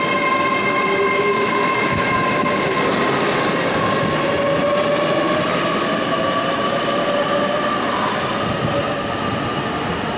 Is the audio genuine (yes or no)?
yes